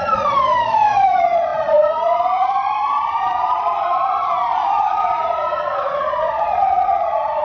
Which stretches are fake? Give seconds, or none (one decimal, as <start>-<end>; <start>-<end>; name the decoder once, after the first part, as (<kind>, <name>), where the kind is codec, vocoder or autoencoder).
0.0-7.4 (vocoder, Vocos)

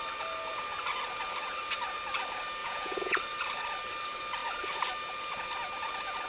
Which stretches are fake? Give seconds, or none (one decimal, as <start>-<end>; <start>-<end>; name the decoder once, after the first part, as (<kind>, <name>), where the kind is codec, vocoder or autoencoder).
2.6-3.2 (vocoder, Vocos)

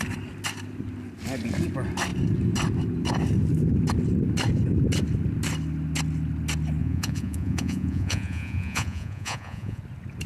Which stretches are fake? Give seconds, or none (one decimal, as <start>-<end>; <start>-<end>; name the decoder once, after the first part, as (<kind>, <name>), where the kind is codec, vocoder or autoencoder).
6.8-9.8 (vocoder, Vocos)

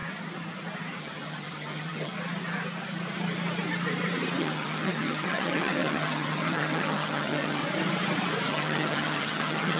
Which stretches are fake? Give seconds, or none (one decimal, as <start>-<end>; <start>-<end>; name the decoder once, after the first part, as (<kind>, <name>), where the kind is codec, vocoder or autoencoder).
1.0-2.1 (vocoder, HiFi-GAN); 4.4-7.6; 8.5-9.8

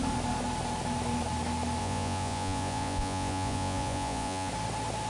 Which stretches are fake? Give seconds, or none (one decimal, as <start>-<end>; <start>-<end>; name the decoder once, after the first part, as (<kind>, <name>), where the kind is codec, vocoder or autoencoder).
1.8-4.5 (vocoder, Vocos)

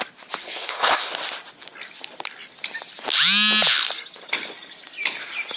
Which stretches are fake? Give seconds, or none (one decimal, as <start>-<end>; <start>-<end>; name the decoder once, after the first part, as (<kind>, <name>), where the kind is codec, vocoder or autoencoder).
0.4-1.1 (codec, HILCodec)

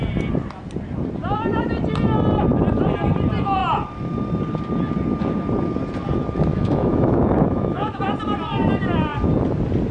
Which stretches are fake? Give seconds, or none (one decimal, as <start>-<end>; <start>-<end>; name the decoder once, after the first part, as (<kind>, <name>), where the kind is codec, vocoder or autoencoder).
6.5-8.0 (autoencoder, DAC-VAE)